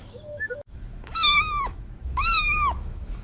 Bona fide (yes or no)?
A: no